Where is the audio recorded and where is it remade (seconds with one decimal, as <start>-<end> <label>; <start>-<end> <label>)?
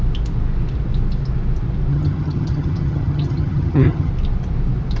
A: 0.0-1.9 recorded; 1.9-4.1 remade; 4.1-5.0 recorded